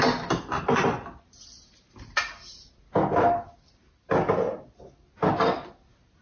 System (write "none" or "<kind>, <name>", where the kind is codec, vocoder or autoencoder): none